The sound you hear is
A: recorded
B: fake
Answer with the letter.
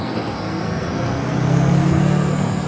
B